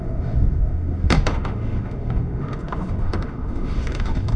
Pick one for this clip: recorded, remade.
remade